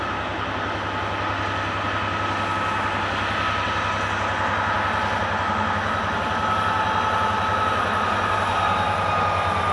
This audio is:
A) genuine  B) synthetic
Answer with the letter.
A